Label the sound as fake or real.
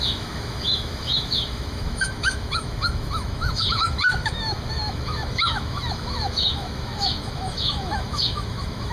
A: fake